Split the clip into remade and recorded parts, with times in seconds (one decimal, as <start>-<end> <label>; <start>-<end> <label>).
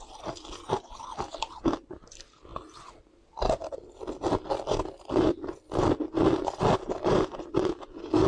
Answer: 0.0-8.3 recorded